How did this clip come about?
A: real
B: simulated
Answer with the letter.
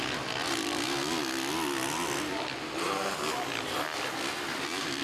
A